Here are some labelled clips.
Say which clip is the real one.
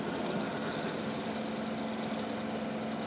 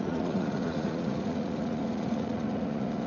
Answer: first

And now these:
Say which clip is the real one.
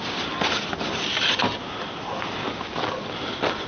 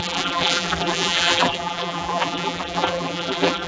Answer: first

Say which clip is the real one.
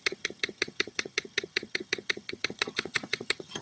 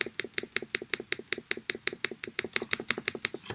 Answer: second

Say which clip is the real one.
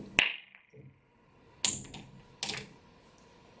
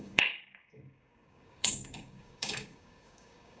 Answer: first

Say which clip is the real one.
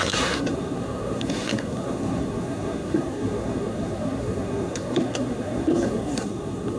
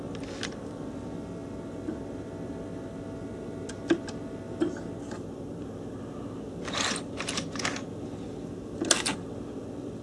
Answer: second